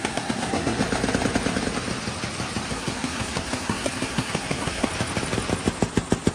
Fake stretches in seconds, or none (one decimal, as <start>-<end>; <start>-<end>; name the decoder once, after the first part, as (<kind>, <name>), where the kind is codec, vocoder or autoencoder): 0.0-0.8 (codec, SNAC); 2.7-4.9